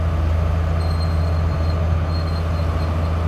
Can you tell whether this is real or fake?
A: real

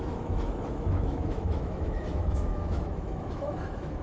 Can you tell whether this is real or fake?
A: fake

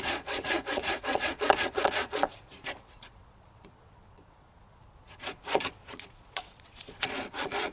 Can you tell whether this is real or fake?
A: fake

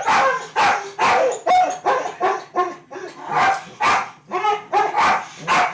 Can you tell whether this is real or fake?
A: real